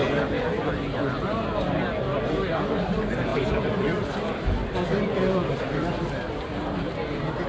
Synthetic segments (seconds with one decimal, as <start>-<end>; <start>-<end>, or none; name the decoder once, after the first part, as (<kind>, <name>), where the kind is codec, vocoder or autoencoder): 3.3-5.9 (vocoder, BigVGAN v2)